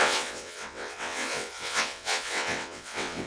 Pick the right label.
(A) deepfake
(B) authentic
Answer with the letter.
A